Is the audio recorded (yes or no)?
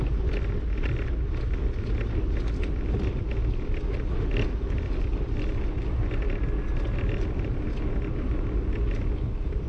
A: yes